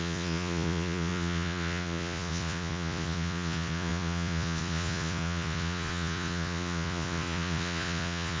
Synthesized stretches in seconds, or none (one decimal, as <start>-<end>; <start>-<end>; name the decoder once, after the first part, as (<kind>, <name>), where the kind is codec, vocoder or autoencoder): 0.0-8.4 (vocoder, Vocos)